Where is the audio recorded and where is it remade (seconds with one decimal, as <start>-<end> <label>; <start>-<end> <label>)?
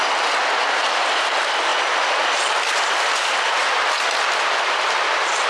0.0-1.7 recorded; 1.7-5.0 remade; 5.0-5.5 recorded